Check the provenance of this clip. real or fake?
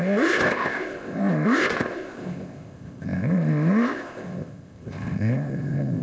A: fake